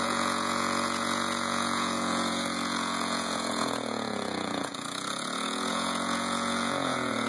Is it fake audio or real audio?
fake